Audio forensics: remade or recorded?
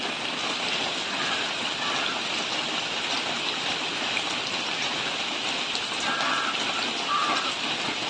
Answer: recorded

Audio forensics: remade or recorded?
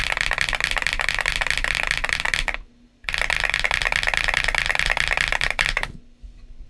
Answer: recorded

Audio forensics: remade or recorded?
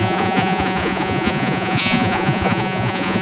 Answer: remade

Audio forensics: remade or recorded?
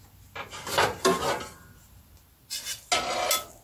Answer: recorded